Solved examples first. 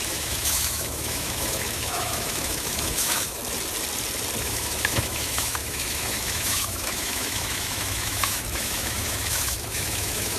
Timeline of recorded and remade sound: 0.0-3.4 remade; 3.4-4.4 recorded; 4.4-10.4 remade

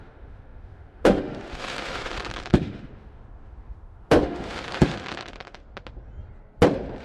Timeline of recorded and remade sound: 0.0-5.6 remade; 5.6-7.0 recorded